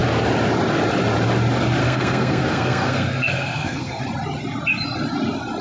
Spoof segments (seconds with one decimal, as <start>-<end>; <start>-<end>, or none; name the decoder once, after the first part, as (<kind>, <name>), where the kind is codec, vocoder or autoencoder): 1.8-4.0 (codec, SNAC)